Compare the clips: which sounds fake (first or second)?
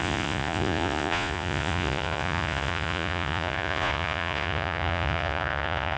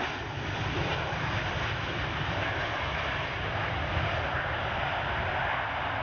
first